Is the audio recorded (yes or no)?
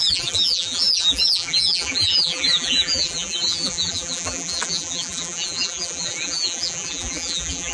no